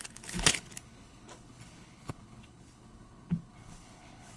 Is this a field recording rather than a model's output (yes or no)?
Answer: no